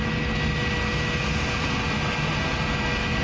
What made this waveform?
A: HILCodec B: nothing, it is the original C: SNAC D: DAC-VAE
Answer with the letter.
B